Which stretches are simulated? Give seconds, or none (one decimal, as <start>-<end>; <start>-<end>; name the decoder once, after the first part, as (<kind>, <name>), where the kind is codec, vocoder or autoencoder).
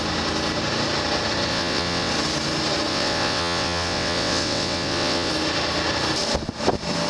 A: 1.5-2.1 (vocoder, WaveNeXt); 2.9-5.3